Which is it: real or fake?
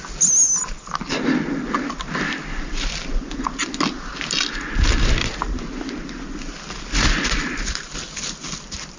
real